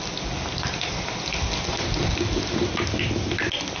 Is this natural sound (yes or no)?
yes